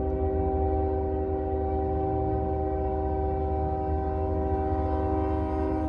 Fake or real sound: real